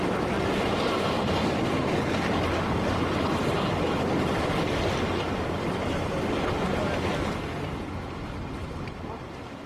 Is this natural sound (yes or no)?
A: yes